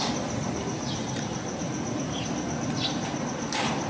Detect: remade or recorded recorded